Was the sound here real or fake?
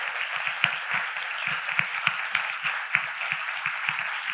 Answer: real